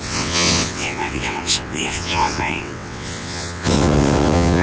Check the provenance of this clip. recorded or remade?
remade